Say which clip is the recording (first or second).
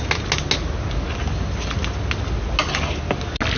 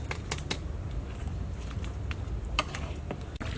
first